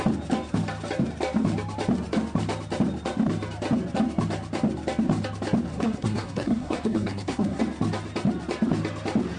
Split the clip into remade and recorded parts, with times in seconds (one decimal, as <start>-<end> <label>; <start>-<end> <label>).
0.0-5.7 recorded; 5.7-7.6 remade; 7.6-9.4 recorded